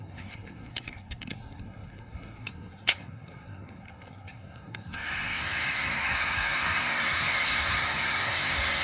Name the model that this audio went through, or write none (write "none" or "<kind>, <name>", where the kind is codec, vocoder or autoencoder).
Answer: codec, SNAC